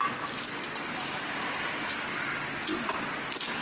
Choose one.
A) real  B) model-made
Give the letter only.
A